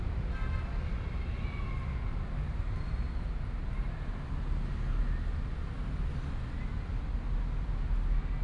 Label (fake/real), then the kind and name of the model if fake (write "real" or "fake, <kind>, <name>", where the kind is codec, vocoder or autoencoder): real